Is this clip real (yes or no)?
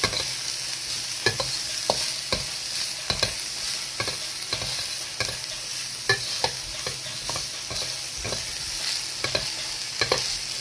yes